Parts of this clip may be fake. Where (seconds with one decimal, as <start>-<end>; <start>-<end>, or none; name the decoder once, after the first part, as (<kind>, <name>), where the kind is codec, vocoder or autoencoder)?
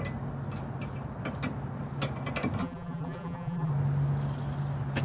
2.6-3.7 (vocoder, BigVGAN v2)